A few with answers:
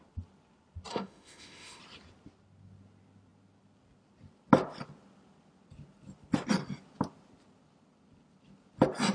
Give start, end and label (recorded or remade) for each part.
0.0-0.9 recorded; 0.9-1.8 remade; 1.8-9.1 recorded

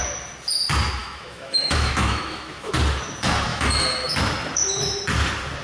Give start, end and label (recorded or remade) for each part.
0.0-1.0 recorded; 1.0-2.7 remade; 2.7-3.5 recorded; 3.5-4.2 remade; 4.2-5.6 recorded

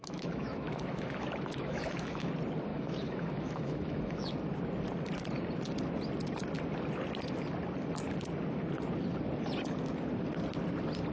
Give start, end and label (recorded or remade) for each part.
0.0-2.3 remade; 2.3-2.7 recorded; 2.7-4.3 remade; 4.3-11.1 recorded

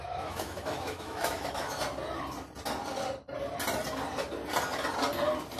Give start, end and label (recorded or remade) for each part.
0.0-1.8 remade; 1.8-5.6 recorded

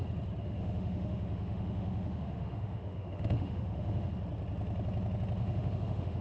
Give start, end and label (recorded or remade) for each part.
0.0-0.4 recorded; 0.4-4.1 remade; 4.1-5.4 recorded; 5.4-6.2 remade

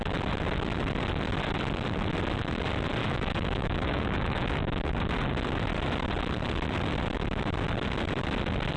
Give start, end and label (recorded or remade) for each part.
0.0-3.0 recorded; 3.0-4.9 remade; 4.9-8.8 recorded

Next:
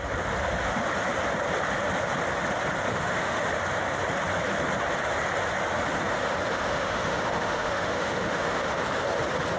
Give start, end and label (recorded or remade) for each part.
0.0-2.9 recorded; 2.9-3.5 remade; 3.5-6.5 recorded; 6.5-8.8 remade; 8.8-9.6 recorded

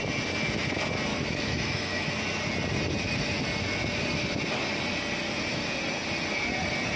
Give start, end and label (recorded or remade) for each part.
0.0-1.1 recorded; 1.1-2.1 remade; 2.1-7.0 recorded